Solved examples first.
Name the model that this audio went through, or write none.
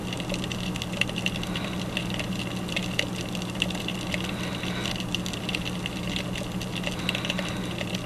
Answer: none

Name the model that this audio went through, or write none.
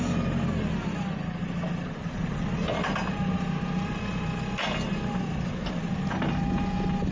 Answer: none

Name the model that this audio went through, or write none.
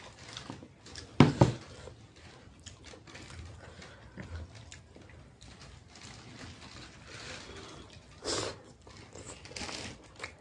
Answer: none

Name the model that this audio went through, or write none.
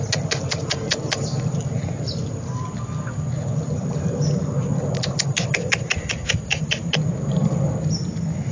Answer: none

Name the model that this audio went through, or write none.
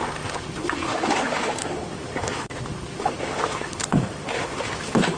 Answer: autoencoder, DAC-VAE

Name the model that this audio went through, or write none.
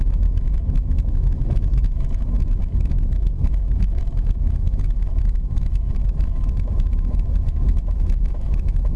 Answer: autoencoder, DAC-VAE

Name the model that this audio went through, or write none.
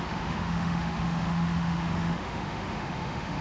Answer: autoencoder, DAC-VAE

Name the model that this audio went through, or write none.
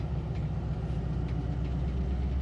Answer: none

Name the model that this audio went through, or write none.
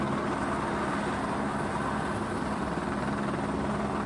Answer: none